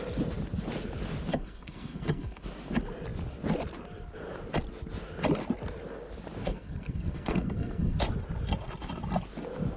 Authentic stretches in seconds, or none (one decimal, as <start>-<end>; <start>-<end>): 0.0-1.3; 2.4-6.4; 8.0-9.8